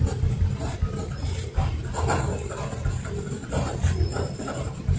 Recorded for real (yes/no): yes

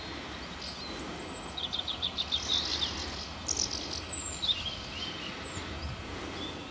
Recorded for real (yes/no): yes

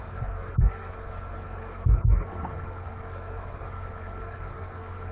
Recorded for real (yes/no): no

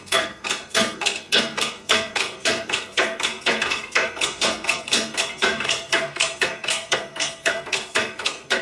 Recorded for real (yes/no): no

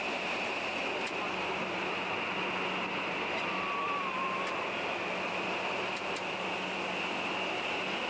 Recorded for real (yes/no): yes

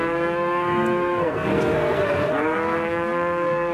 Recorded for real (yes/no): no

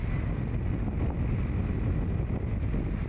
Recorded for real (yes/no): yes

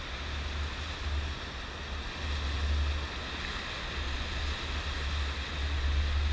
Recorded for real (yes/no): yes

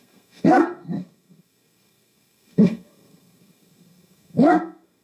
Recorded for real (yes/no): no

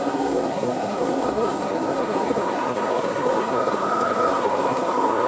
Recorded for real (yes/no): no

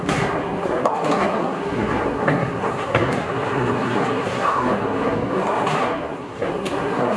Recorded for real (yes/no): no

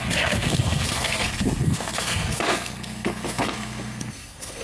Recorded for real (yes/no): no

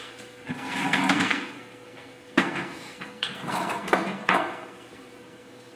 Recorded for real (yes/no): no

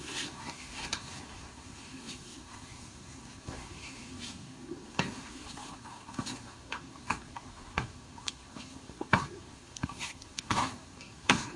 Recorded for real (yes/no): no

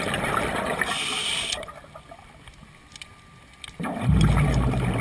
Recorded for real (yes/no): yes